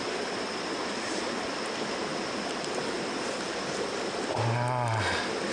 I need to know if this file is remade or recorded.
recorded